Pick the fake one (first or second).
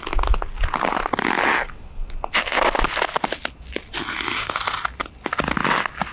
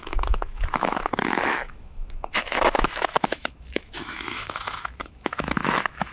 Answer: second